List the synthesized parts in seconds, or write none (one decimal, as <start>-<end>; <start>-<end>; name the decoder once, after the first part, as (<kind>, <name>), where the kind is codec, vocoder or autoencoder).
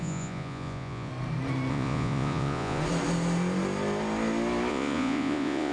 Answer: 0.0-1.1 (vocoder, Vocos); 1.7-2.8; 4.7-5.7